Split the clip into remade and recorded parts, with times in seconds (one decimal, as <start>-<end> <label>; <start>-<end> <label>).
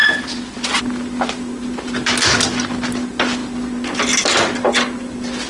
0.0-0.8 remade; 0.8-5.5 recorded